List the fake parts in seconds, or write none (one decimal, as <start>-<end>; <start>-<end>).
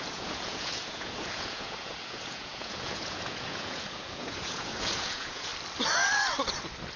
0.0-5.5